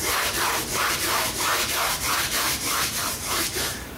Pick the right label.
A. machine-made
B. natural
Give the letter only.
A